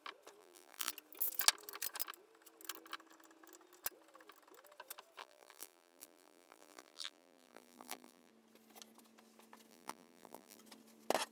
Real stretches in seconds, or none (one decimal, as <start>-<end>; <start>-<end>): 0.0-0.4; 0.9-5.2; 8.3-9.7; 10.6-11.3